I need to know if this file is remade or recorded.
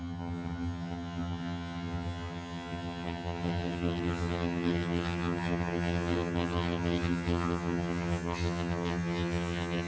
remade